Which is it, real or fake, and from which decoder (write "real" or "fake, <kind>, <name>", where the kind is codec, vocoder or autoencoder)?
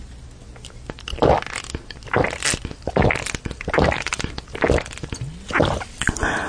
real